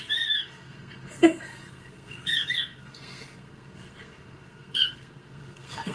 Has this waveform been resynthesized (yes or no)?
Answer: yes